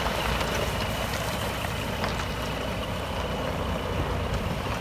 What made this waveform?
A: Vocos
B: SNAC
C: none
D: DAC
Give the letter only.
C